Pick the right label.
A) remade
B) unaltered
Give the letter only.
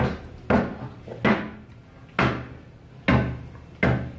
B